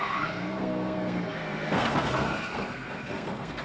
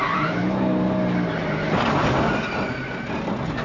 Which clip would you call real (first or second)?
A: second